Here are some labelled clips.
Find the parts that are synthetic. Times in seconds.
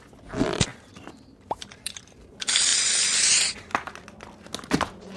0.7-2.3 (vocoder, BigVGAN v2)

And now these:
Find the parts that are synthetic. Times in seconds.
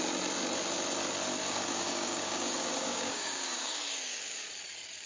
1.4-4.5 (codec, DAC)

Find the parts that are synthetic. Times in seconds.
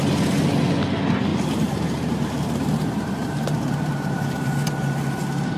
1.3-4.7 (vocoder, BigVGAN v2)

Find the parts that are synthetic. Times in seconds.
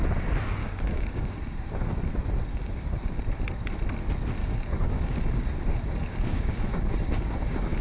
0.6-1.9 (codec, DAC); 2.5-3.2; 4.4-7.8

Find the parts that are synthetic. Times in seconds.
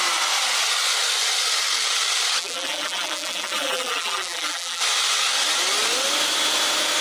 2.4-4.8 (vocoder, BigVGAN v2)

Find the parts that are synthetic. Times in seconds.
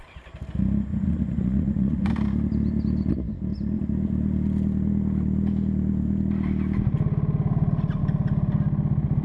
0.9-2.1 (vocoder, Vocos)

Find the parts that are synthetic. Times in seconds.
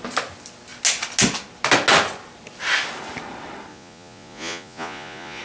3.7-5.4 (vocoder, Vocos)